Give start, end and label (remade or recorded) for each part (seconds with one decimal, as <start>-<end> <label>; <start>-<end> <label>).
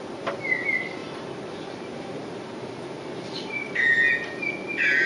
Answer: 0.0-1.0 recorded; 1.0-4.1 remade; 4.1-5.1 recorded